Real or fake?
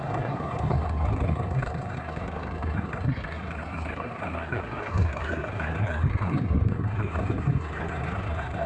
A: fake